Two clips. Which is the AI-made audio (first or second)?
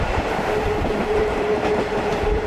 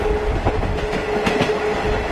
first